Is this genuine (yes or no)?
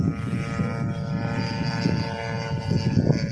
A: yes